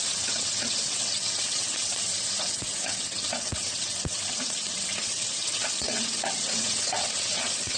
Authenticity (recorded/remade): remade